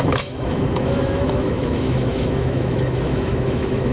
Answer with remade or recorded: remade